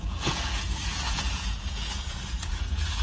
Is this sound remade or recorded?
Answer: remade